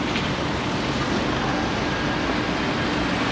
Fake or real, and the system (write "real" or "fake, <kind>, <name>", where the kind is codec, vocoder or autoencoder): real